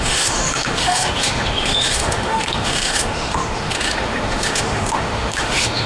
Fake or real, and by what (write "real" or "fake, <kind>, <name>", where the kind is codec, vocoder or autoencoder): fake, autoencoder, DAC-VAE